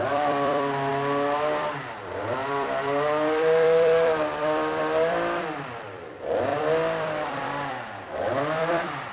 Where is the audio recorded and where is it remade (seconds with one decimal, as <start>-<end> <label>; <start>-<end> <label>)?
0.0-0.9 remade; 0.9-1.6 recorded; 1.6-9.1 remade